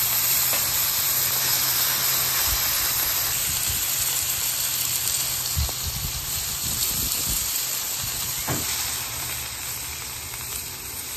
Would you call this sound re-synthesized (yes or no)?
yes